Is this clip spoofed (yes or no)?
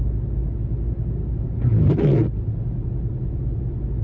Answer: no